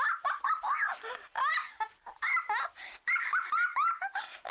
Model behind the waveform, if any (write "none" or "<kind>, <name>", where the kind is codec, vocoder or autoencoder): none